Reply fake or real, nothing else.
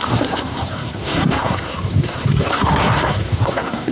fake